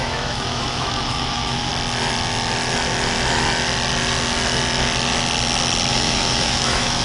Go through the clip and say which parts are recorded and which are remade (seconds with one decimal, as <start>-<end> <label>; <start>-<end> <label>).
0.0-1.7 remade; 1.7-5.9 recorded; 5.9-7.0 remade